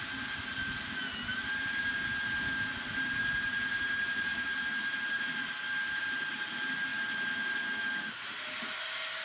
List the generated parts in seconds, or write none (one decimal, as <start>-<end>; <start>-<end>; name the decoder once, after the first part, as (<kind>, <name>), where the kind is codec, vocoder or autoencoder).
none